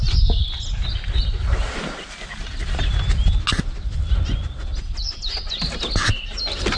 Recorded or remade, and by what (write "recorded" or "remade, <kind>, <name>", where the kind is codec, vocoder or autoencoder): recorded